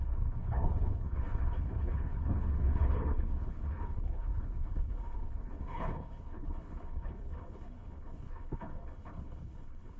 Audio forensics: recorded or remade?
remade